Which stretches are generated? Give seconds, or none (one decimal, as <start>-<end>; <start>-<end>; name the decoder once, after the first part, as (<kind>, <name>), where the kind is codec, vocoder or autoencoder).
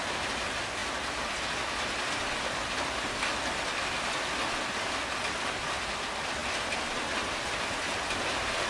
none